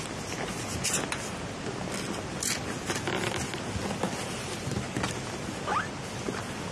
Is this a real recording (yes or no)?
yes